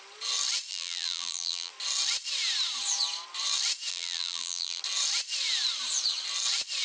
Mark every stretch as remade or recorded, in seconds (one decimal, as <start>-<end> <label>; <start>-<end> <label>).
0.0-0.7 recorded; 0.7-1.7 remade; 1.7-3.9 recorded; 3.9-4.8 remade; 4.8-6.8 recorded